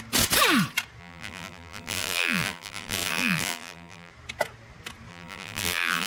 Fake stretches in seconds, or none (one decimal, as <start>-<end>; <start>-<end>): 1.0-4.1; 5.1-6.1